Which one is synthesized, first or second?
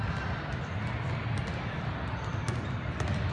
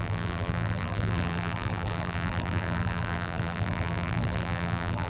second